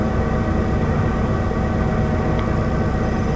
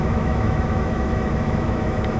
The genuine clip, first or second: first